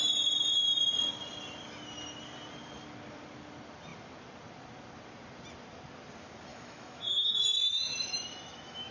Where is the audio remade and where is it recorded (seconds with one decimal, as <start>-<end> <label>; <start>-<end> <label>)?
0.0-6.5 recorded; 6.5-8.9 remade